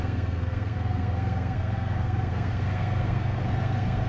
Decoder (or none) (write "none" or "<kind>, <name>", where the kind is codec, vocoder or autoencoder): codec, SNAC